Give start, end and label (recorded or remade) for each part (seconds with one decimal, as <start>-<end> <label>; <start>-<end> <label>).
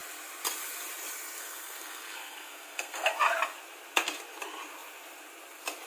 0.0-1.4 recorded; 1.4-3.1 remade; 3.1-5.9 recorded